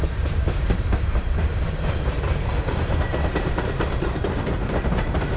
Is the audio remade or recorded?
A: remade